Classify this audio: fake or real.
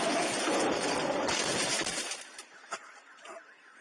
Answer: real